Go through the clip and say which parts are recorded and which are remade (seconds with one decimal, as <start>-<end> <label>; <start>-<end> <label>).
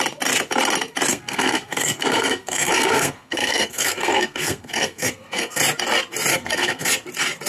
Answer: 0.0-1.1 recorded; 1.1-5.6 remade; 5.6-6.3 recorded; 6.3-6.9 remade; 6.9-7.5 recorded